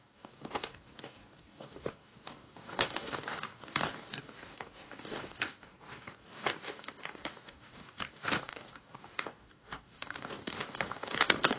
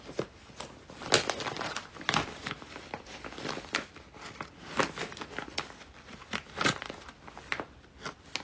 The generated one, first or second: first